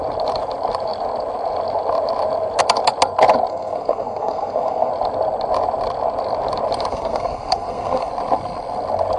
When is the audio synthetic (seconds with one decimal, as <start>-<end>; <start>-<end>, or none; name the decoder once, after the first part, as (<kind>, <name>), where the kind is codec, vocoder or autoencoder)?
3.5-4.9 (codec, SNAC); 6.9-8.1